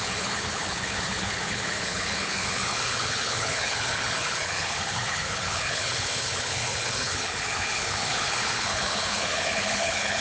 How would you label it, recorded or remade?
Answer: remade